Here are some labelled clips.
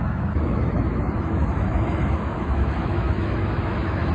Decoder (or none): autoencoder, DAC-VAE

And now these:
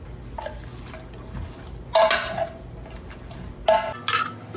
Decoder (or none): none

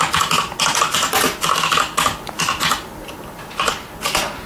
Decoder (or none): none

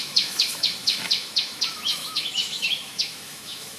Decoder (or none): autoencoder, DAC-VAE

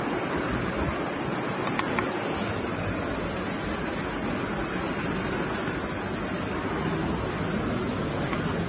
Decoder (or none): none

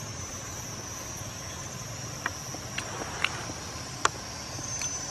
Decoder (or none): none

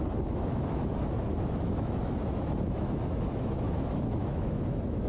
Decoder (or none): autoencoder, DAC-VAE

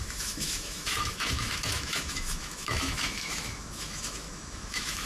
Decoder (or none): autoencoder, DAC-VAE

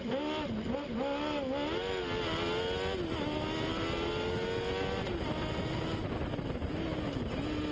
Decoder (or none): none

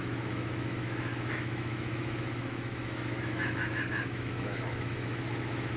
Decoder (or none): autoencoder, DAC-VAE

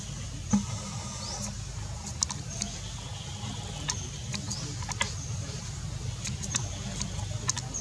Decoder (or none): none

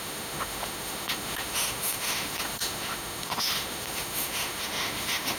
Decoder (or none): autoencoder, DAC-VAE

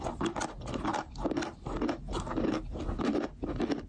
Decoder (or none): none